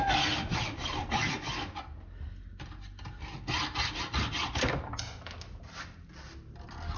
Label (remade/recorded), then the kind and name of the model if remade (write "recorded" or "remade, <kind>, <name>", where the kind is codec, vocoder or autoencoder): recorded